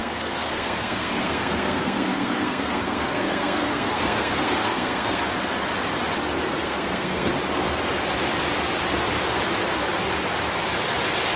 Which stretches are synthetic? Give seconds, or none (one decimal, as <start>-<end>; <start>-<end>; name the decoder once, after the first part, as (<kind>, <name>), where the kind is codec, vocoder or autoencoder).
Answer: 0.0-5.2 (codec, SNAC); 6.6-7.3